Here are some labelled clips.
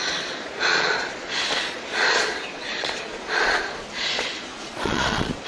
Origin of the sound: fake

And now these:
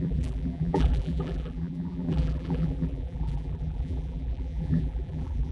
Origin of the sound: fake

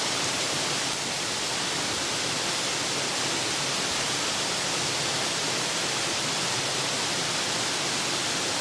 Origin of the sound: real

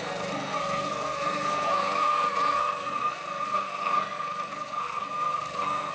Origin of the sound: fake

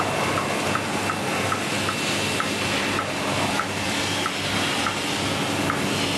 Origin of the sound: real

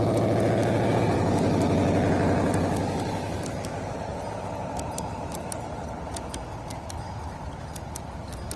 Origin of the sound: real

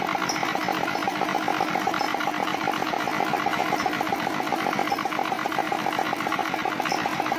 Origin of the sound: real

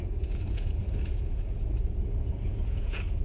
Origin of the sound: fake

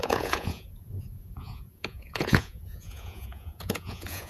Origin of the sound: fake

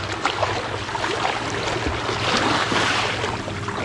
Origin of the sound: real